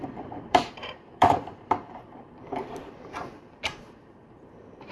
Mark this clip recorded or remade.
remade